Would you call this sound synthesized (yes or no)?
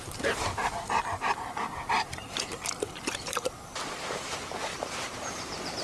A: yes